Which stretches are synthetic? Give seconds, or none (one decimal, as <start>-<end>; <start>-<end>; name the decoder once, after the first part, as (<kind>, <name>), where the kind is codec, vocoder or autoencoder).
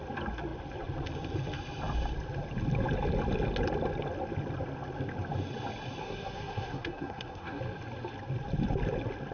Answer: 6.0-7.6 (codec, SNAC)